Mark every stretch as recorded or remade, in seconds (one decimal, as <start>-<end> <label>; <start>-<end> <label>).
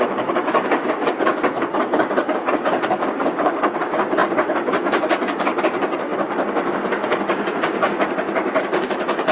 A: 0.0-9.3 remade